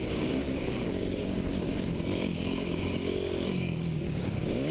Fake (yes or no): yes